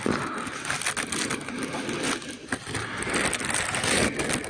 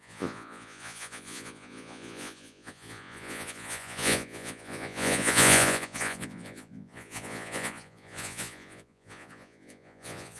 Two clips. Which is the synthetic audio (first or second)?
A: second